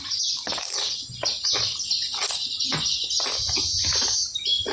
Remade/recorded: recorded